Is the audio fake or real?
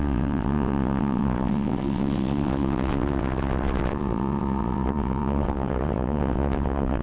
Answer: fake